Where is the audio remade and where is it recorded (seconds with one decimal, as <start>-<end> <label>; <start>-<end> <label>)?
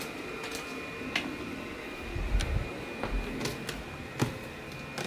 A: 0.0-5.1 recorded